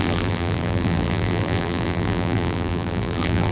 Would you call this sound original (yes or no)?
no